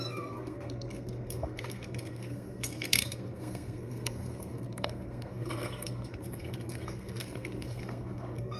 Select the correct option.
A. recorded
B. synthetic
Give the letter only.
B